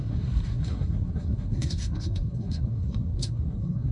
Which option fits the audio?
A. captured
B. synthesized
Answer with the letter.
B